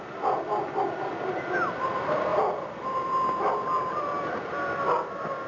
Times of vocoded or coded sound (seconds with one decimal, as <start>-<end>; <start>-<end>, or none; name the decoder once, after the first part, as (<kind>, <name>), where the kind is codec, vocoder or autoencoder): none

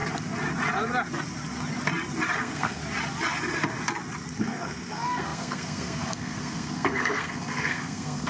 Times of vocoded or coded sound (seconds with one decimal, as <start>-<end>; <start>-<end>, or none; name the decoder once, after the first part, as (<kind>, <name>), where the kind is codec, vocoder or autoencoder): 2.4-2.8 (codec, SNAC); 4.4-8.3

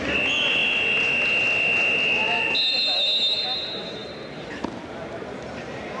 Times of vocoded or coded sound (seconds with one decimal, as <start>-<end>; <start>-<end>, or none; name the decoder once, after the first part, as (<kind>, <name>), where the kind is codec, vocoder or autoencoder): none

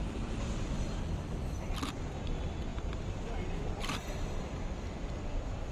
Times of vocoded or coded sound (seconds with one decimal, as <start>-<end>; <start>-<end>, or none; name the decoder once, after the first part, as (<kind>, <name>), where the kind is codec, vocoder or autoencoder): 0.0-5.7 (vocoder, BigVGAN v2)

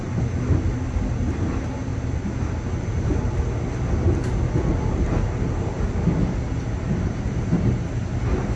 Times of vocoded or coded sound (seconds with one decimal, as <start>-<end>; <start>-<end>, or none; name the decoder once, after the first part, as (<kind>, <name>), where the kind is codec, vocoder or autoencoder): 1.9-2.6 (vocoder, BigVGAN v2)

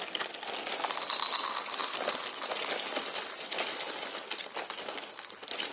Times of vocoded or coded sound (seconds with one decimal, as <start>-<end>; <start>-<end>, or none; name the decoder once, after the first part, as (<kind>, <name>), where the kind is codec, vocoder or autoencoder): none